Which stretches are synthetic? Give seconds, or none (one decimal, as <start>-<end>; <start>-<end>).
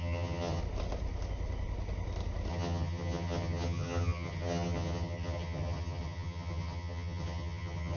0.0-0.6; 2.5-8.0